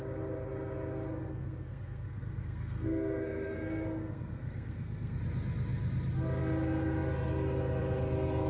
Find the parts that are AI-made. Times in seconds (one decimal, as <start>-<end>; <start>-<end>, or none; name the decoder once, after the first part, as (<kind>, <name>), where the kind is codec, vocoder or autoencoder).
1.3-5.2 (codec, SNAC)